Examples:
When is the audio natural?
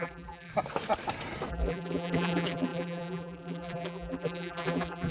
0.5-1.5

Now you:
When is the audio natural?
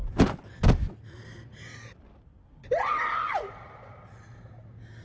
0.5-5.0